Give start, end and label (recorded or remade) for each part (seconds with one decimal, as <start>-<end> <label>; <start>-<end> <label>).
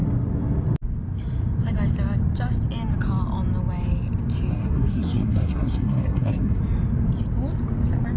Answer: 0.0-4.5 recorded; 4.5-6.6 remade; 6.6-8.2 recorded